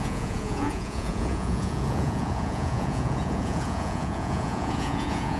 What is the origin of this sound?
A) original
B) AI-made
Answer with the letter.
B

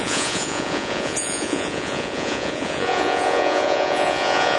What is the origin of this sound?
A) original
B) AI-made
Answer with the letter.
B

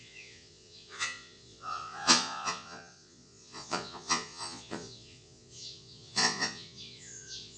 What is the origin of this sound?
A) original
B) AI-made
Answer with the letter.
B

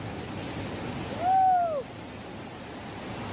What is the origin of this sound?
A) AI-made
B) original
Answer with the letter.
B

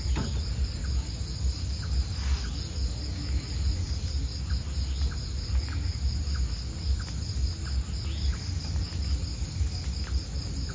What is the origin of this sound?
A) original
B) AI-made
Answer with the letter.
A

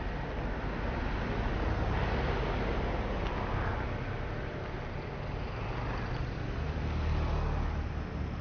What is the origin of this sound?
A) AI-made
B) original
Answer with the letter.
B